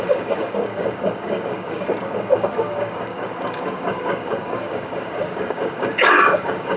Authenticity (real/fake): fake